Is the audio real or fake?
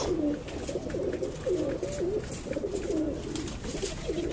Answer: real